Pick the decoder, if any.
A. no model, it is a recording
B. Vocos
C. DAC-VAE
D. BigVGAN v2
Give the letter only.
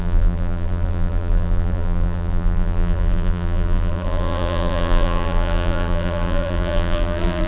D